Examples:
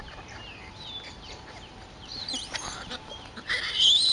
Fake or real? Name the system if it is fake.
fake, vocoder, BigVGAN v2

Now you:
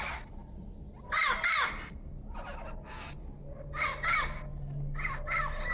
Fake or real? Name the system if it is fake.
real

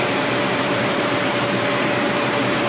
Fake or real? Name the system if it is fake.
fake, vocoder, BigVGAN v2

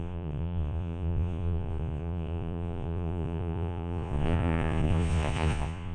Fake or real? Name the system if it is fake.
fake, vocoder, Vocos